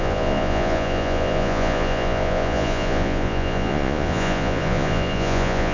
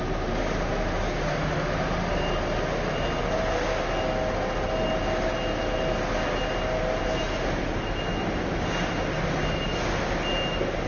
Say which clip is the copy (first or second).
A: first